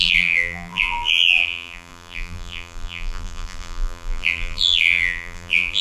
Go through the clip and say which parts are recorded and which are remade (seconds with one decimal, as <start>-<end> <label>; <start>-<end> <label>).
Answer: 0.0-5.8 remade